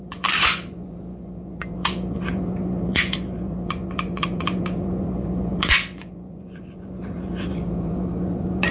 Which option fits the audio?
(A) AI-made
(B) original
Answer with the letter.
A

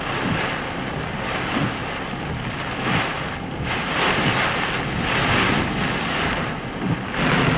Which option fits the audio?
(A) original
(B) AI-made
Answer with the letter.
A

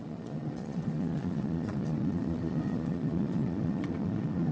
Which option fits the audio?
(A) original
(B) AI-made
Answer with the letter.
B